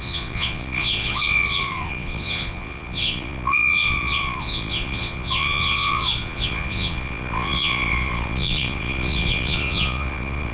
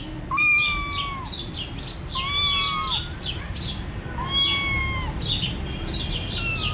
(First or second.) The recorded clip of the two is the second